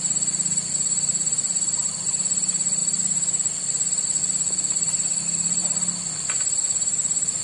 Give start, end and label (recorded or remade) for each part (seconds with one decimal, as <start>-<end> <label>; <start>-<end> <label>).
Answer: 0.0-7.4 recorded